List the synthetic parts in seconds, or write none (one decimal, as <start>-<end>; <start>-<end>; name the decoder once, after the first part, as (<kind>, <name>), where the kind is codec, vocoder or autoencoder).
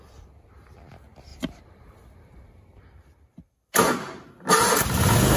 1.3-4.5 (vocoder, BigVGAN v2)